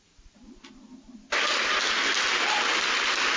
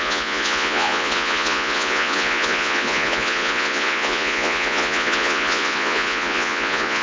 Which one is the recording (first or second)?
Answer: first